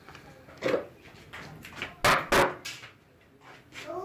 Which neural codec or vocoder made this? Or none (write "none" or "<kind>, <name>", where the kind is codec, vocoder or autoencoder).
none